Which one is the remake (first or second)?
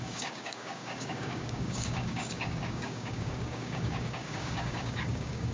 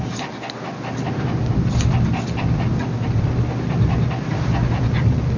first